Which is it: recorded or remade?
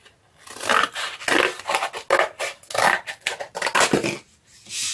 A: recorded